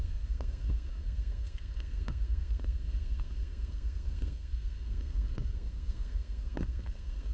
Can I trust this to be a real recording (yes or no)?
no